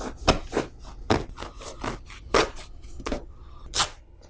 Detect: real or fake real